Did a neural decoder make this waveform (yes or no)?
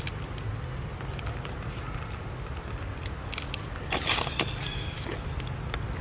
no